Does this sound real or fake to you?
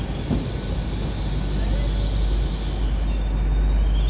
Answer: real